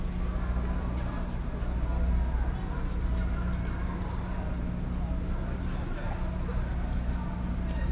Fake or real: real